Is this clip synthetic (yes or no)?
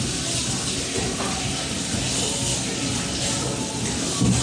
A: no